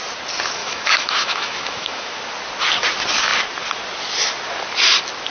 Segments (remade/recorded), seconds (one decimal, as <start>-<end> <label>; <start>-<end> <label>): 0.0-0.6 recorded; 0.6-2.2 remade; 2.2-5.3 recorded